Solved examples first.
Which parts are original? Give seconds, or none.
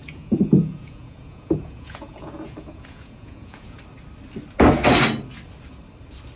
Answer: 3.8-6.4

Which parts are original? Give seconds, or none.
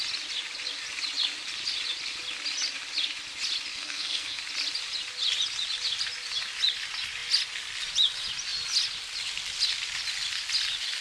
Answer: 0.0-3.7; 4.4-11.0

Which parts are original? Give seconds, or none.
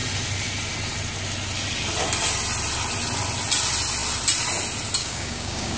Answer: 0.0-5.0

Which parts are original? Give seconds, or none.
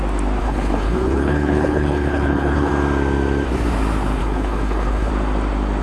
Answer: 0.0-0.4; 2.7-4.2; 5.1-5.8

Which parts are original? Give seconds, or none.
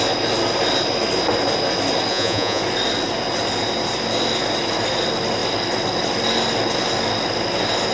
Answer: 0.0-2.1; 2.6-7.9